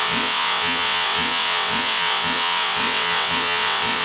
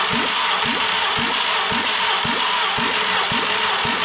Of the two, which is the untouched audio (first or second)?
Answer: second